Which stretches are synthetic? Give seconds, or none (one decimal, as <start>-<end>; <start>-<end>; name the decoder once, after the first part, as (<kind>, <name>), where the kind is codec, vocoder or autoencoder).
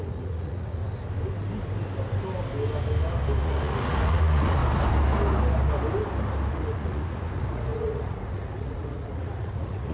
0.0-0.8 (vocoder, Vocos); 3.4-4.6; 6.5-9.9